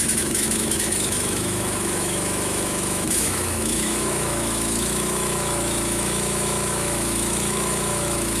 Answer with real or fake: fake